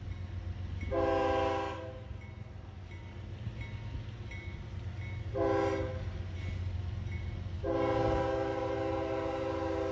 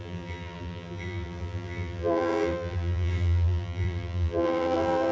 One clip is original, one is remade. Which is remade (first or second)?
second